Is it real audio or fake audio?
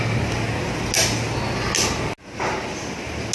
real